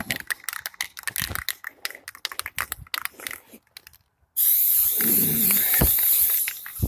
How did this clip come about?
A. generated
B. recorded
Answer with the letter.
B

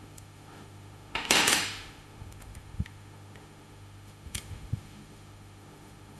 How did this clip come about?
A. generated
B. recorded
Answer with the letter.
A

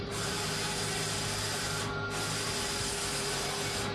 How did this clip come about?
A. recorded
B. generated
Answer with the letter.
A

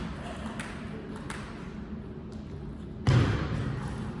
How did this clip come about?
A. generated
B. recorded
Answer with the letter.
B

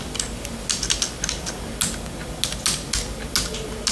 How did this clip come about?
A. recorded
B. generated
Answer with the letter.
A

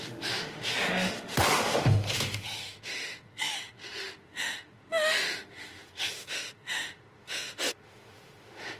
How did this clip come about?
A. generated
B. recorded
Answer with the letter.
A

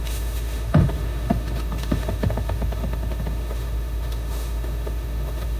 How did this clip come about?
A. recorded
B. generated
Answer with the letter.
B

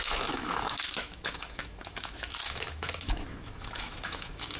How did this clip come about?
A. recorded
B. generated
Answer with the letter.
B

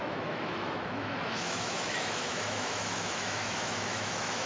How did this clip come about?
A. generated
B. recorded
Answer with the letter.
A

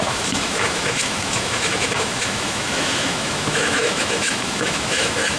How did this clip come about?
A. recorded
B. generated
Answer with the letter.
B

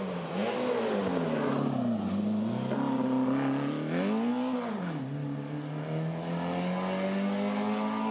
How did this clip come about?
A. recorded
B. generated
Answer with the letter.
A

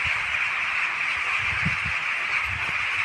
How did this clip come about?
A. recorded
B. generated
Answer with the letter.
A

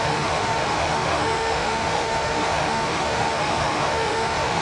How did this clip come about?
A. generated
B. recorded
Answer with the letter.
A